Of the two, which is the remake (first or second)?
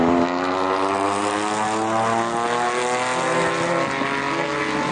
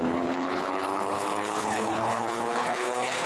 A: second